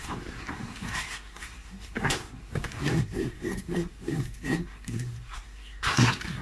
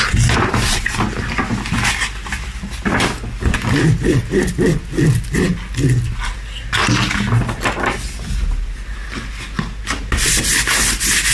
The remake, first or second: first